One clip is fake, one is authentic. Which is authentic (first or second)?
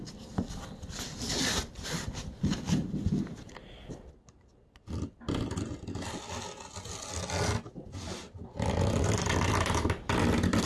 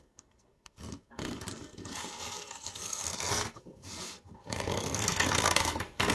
first